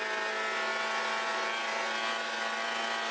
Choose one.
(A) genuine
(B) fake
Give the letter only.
A